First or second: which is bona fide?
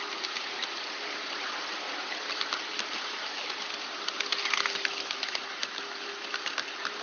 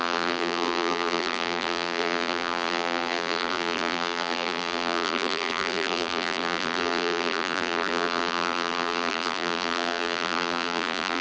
first